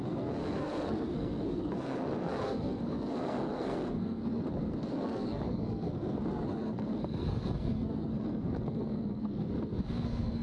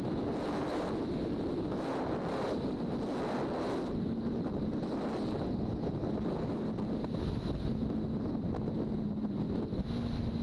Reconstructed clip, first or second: first